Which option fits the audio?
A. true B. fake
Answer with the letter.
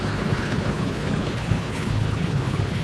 B